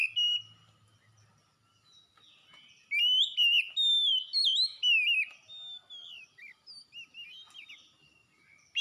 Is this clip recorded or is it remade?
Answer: recorded